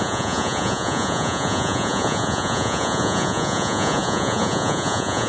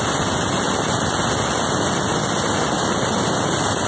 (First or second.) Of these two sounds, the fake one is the first